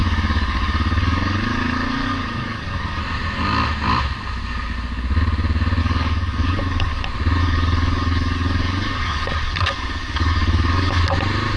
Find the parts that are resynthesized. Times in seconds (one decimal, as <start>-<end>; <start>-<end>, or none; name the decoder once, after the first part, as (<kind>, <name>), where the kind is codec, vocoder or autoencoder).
0.0-3.0 (codec, DAC); 5.8-7.0; 7.4-11.0